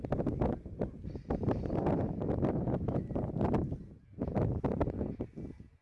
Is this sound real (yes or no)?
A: yes